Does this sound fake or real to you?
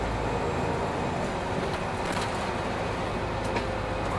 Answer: real